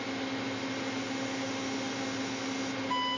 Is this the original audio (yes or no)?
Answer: yes